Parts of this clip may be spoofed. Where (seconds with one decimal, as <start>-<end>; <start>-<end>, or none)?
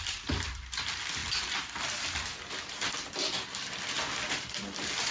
0.0-1.2; 4.3-5.1